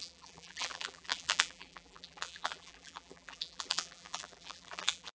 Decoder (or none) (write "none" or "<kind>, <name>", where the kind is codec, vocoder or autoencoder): vocoder, BigVGAN v2